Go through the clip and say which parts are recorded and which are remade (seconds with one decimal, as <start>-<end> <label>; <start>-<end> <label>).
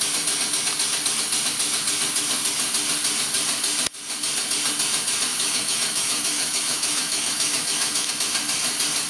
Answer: 0.0-5.3 recorded; 5.3-8.1 remade; 8.1-9.1 recorded